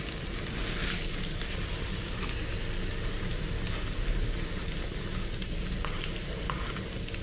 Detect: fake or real real